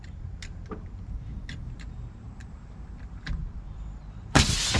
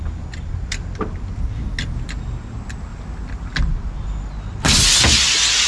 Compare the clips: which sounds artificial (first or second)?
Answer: first